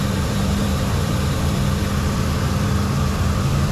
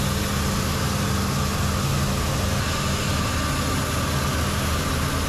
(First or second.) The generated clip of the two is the first